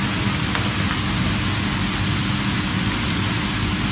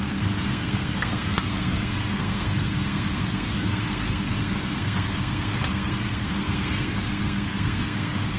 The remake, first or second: second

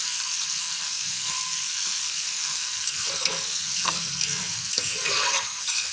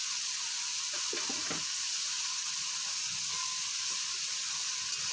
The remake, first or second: first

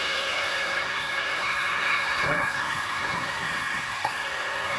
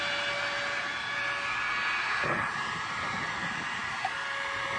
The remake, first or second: first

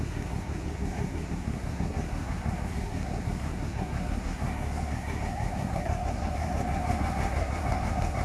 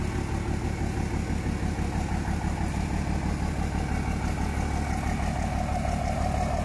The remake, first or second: first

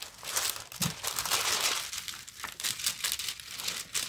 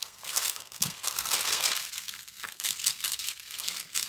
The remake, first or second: second